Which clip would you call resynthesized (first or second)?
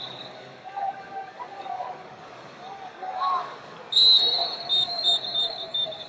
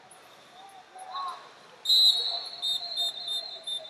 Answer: first